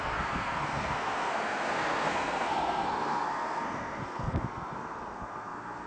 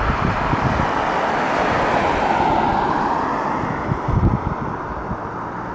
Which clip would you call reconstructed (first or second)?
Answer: first